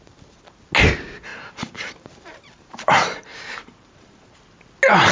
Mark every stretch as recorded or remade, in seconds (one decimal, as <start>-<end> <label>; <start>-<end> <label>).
0.0-1.3 recorded; 1.3-4.4 remade; 4.4-5.1 recorded